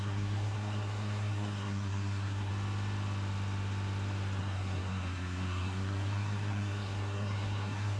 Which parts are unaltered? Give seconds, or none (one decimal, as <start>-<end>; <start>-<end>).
2.5-4.4